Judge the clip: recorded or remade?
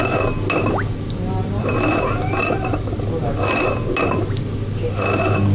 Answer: recorded